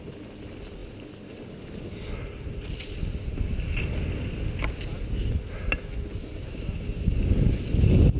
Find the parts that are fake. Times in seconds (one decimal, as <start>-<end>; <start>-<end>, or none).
none